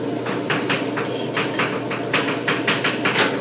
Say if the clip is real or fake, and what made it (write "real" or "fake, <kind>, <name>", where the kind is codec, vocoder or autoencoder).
real